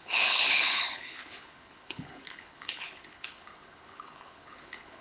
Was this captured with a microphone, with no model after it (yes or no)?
no